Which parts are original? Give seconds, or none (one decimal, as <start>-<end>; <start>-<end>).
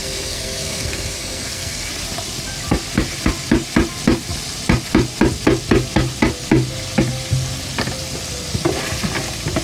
1.9-9.6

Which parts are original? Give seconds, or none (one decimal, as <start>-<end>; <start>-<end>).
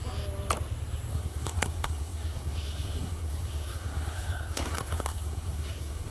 0.0-1.1